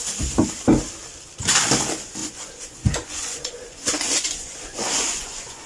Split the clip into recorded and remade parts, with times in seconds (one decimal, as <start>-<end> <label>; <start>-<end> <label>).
0.0-2.2 recorded; 2.2-5.7 remade